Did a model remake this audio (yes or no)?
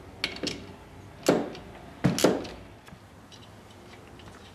no